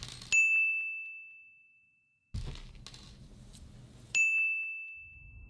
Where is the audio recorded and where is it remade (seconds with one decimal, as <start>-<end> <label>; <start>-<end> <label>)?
0.0-5.5 recorded